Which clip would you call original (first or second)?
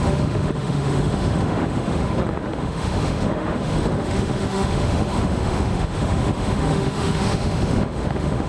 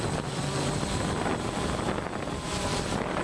second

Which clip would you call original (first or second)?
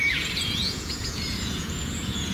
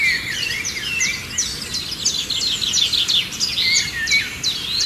second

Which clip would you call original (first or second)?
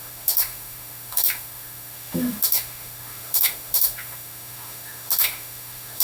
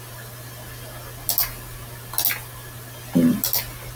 second